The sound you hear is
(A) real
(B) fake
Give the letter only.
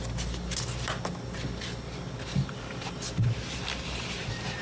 A